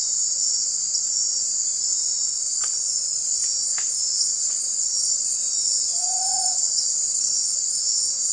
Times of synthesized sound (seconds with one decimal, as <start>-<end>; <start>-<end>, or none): 2.3-3.3; 4.3-4.9; 5.4-7.4